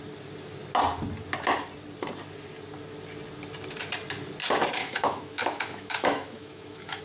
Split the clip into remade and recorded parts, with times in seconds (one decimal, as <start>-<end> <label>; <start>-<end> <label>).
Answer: 0.0-4.8 recorded; 4.8-7.0 remade